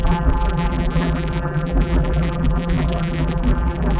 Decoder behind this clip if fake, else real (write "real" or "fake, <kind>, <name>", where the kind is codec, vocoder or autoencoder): fake, vocoder, BigVGAN v2